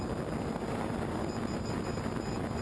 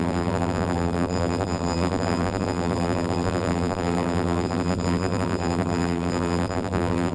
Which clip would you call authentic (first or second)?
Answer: first